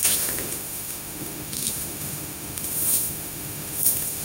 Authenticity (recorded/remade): remade